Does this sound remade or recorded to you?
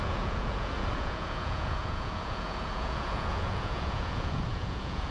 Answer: remade